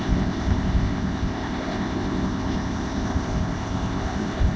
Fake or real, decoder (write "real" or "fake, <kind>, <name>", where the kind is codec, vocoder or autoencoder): fake, codec, ZipCodec